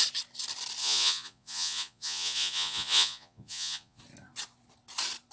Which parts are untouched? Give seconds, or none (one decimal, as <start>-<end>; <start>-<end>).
0.0-0.8; 4.0-5.3

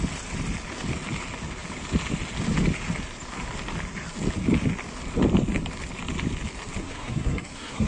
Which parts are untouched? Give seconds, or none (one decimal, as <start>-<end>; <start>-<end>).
0.0-6.8